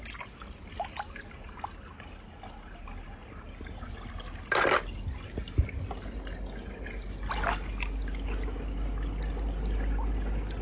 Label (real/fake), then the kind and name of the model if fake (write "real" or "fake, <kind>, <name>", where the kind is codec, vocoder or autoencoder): real